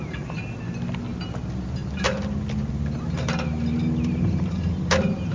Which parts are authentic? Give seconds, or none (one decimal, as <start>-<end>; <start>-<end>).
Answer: 0.0-5.3